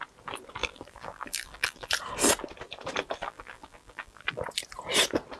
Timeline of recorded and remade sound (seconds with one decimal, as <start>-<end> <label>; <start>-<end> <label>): 0.0-0.6 recorded; 0.6-1.9 remade; 1.9-3.2 recorded; 3.2-4.4 remade; 4.4-5.4 recorded